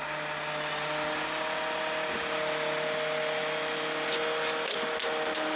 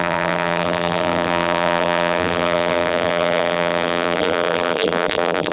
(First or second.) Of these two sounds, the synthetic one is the second